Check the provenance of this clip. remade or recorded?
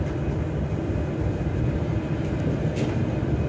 recorded